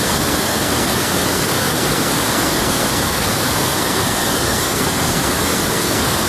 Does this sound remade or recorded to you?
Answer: remade